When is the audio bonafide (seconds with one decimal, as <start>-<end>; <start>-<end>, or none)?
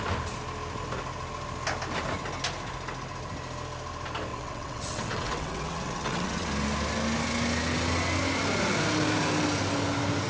0.0-4.3; 6.5-10.3